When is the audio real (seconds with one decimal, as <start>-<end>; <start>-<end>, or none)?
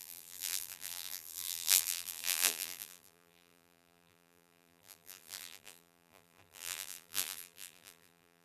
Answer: none